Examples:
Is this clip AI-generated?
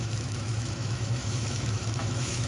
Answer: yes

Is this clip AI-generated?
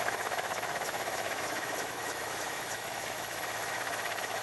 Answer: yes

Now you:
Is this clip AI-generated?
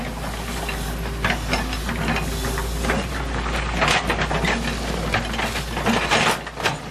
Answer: no